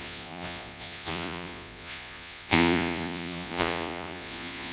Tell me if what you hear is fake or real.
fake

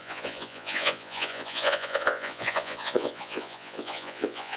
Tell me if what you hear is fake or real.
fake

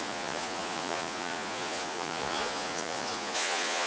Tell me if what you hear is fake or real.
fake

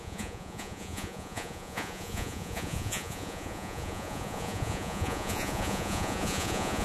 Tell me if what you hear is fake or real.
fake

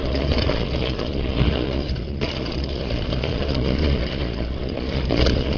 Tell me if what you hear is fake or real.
fake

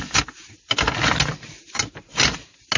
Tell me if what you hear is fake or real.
real